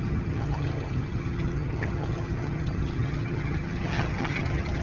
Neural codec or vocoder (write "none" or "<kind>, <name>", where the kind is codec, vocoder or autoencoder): vocoder, HiFi-GAN